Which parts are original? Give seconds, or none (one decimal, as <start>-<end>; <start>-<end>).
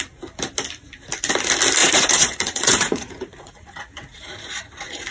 0.0-1.8